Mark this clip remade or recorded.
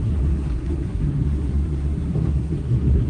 remade